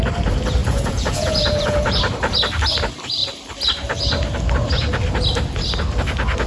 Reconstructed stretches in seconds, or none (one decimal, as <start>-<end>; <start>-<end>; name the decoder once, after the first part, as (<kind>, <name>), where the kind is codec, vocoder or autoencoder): 0.6-2.0 (vocoder, Vocos)